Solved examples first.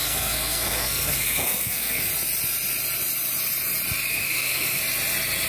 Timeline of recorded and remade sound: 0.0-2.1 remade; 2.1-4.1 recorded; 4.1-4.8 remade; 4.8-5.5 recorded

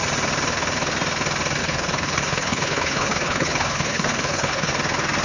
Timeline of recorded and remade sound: 0.0-1.6 recorded; 1.6-4.7 remade; 4.7-5.2 recorded

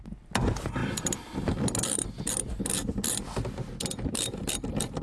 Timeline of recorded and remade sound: 0.0-5.0 recorded

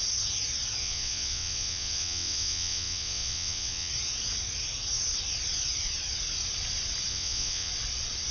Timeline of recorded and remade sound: 0.0-0.8 recorded; 0.8-3.9 remade; 3.9-7.1 recorded; 7.1-7.7 remade; 7.7-8.3 recorded

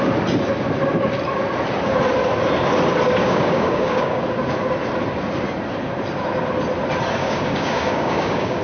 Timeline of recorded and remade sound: 0.0-3.2 recorded; 3.2-4.2 remade; 4.2-7.2 recorded; 7.2-8.6 remade

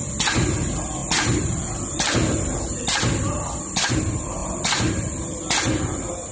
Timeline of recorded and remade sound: 0.0-6.3 recorded

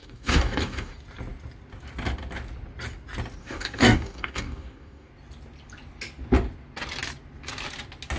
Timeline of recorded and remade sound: 0.0-0.9 remade; 0.9-3.4 recorded; 3.4-5.1 remade; 5.1-8.2 recorded